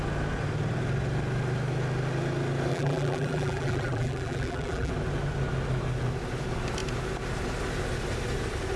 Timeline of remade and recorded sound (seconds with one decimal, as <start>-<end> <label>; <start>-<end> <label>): 0.0-2.7 recorded; 2.7-4.9 remade; 4.9-8.8 recorded